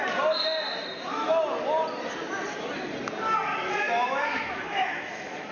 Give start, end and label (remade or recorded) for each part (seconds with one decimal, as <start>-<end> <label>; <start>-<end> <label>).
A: 0.0-3.5 recorded; 3.5-5.5 remade